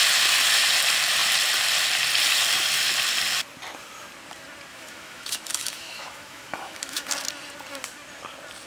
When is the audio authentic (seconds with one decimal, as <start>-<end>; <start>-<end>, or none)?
0.0-4.7; 7.1-8.7